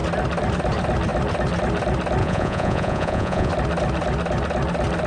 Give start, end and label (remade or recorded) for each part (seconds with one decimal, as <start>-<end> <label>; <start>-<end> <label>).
0.0-2.2 recorded; 2.2-3.5 remade; 3.5-5.1 recorded